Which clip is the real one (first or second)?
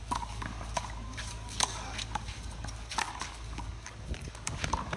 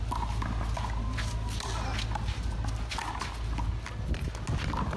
second